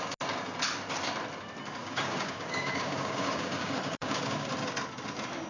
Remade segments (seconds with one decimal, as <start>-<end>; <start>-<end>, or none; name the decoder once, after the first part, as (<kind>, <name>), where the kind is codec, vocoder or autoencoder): 1.8-4.5 (codec, DAC)